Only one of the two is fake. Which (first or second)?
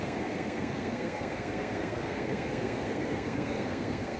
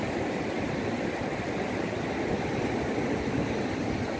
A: first